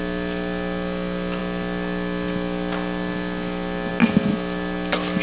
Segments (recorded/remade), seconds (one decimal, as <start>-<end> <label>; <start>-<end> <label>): 0.0-5.2 recorded